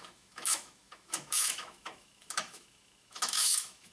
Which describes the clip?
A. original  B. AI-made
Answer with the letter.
B